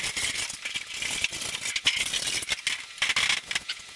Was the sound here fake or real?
real